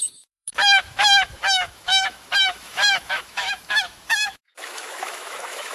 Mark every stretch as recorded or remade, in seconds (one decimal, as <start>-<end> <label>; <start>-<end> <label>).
0.0-5.7 remade